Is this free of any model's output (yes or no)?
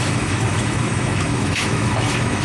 no